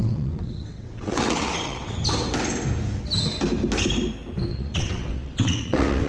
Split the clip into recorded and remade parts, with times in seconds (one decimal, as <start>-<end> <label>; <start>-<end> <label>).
0.0-2.0 remade; 2.0-4.5 recorded; 4.5-6.1 remade